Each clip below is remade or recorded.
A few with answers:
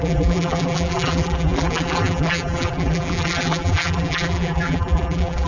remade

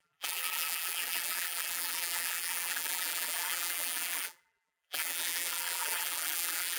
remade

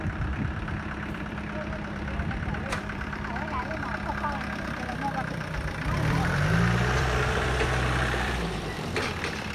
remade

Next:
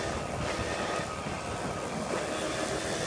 recorded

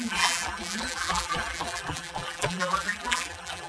remade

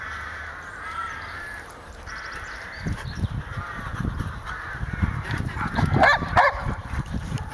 remade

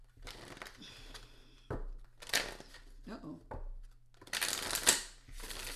recorded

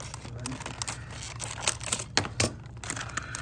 recorded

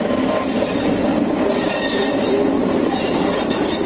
remade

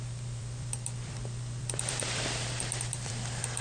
remade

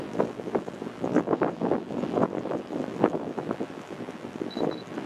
remade